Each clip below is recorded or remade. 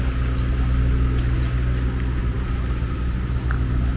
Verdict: recorded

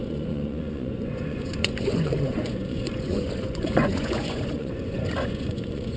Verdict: remade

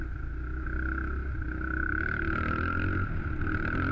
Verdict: recorded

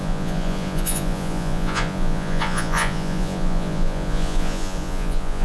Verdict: remade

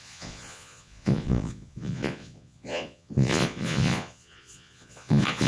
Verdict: remade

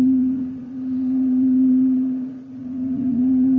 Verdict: remade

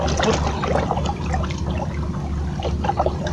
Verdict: recorded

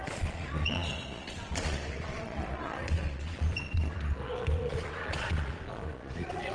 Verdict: remade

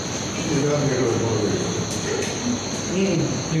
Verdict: recorded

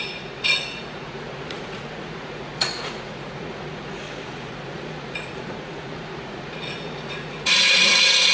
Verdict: remade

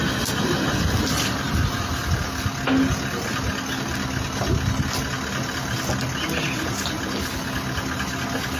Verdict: recorded